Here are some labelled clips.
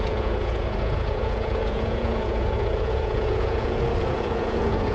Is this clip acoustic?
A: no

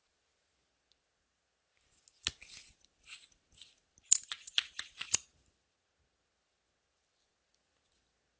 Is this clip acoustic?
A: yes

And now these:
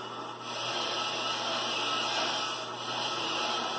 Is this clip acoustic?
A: yes